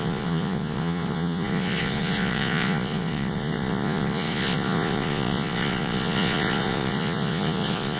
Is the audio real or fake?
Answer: fake